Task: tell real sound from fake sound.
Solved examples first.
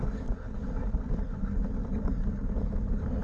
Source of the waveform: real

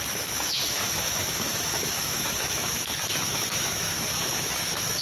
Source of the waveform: fake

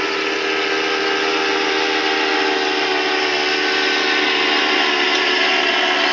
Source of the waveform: real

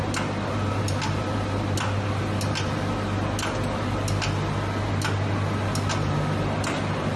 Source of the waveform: real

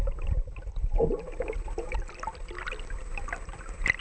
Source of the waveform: real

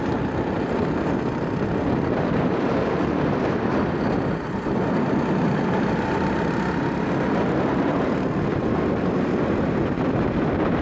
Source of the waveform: real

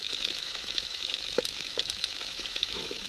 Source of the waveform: fake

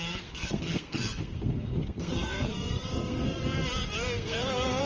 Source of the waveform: fake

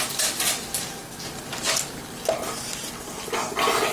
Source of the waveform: real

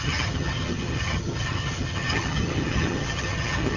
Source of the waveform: fake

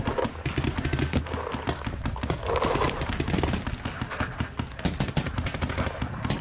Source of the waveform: real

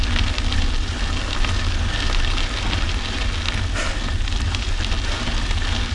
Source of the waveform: real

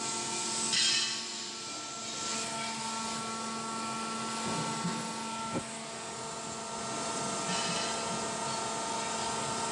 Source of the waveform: real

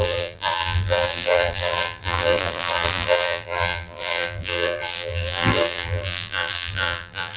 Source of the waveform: fake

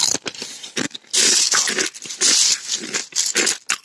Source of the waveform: real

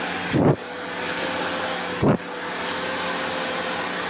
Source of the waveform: real